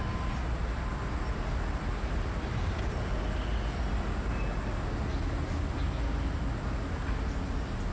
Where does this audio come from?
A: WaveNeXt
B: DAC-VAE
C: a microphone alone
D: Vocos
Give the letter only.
C